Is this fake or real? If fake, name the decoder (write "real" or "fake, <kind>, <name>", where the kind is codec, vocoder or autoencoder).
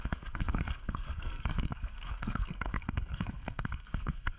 fake, codec, SNAC